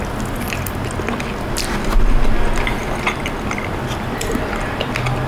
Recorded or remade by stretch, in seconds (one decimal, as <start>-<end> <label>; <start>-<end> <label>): 0.0-2.8 recorded; 2.8-4.3 remade; 4.3-5.3 recorded